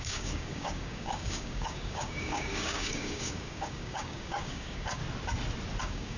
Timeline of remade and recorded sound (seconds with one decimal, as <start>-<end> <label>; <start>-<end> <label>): 0.0-5.0 remade; 5.0-5.8 recorded; 5.8-6.2 remade